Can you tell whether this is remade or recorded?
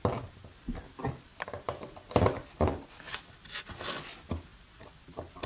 recorded